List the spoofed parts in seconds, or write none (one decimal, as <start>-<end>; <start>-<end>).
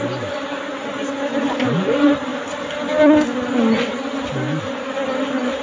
0.0-0.8; 1.4-2.3; 4.6-5.6